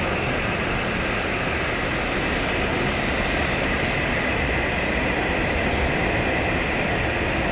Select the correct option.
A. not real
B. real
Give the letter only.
B